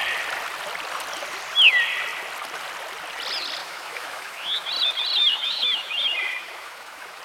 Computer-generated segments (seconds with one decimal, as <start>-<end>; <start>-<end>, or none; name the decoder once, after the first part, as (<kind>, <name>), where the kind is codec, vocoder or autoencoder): 3.6-4.7 (autoencoder, DAC-VAE); 5.2-7.2